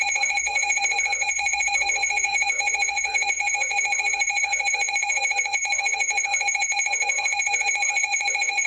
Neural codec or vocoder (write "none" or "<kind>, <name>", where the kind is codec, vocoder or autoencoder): vocoder, WaveNeXt